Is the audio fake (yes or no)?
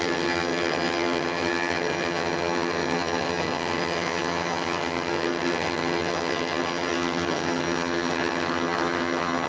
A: yes